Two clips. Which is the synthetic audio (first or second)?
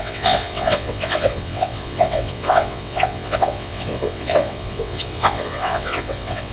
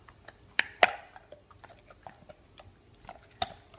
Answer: first